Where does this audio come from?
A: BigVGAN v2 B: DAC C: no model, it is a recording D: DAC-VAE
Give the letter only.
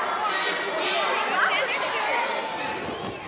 C